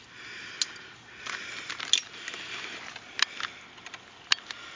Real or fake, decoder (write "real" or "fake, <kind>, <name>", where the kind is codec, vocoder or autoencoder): real